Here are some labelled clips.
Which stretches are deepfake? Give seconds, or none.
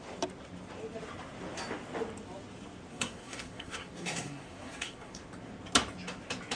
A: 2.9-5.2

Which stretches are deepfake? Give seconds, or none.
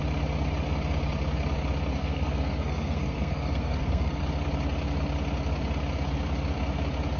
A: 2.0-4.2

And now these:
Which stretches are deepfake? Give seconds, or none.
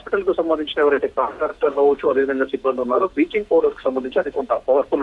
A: 1.5-4.5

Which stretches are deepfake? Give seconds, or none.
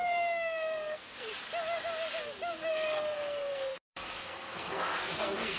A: 0.0-1.3; 2.7-5.6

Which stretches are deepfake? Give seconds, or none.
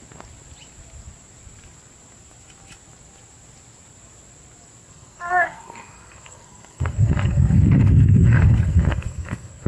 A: 4.9-9.7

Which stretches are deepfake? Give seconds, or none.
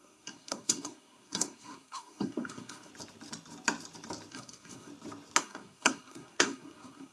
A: 0.0-2.9; 4.3-4.9; 5.4-7.1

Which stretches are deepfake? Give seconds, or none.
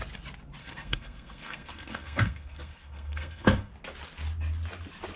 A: 0.6-3.7